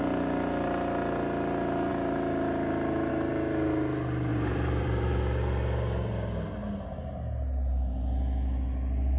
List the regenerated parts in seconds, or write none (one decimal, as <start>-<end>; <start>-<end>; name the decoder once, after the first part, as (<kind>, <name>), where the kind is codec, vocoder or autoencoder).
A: 4.3-5.2 (vocoder, BigVGAN v2)